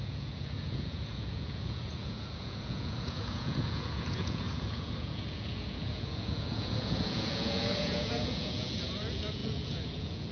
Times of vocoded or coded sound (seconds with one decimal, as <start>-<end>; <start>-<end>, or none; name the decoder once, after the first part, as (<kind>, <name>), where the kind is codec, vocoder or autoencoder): 0.0-10.3 (vocoder, Vocos)